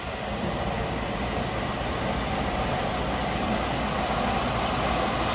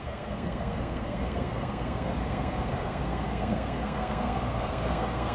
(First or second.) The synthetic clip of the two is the second